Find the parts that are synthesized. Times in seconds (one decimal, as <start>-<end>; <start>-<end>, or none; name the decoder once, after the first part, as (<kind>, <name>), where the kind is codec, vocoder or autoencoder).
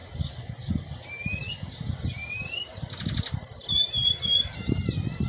2.2-5.3 (vocoder, BigVGAN v2)